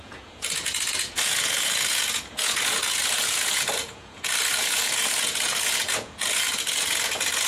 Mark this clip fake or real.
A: fake